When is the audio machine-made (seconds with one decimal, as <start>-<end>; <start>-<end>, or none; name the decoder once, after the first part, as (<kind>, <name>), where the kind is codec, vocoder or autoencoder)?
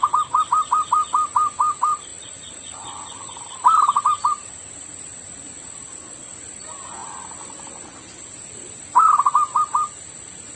2.1-3.4 (vocoder, Vocos)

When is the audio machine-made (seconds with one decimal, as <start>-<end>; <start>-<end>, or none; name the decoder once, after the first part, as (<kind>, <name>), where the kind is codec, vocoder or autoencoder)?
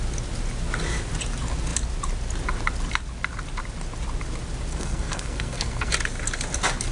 4.7-5.9 (codec, SNAC)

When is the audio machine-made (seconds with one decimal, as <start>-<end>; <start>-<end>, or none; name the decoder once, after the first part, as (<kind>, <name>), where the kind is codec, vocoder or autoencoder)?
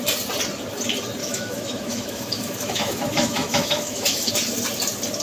1.2-4.3 (autoencoder, DAC-VAE)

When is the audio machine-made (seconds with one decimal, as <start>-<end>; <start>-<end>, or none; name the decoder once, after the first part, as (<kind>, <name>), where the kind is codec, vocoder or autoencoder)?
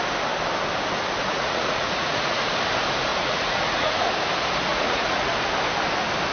1.2-2.5 (vocoder, Vocos); 3.1-4.1; 4.7-5.3